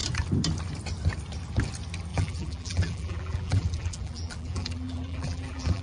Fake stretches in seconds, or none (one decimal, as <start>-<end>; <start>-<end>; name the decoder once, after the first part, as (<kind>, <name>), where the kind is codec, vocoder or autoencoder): 2.1-5.8 (vocoder, BigVGAN v2)